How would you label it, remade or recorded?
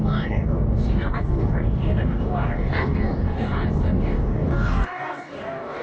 remade